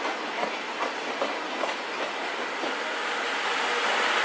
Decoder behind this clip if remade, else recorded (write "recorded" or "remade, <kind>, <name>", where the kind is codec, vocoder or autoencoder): recorded